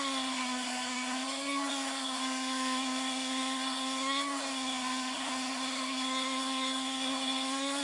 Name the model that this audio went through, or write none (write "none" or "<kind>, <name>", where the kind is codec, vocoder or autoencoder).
codec, SNAC